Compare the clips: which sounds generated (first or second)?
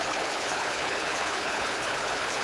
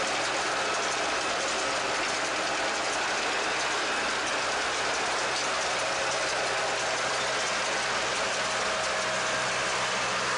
first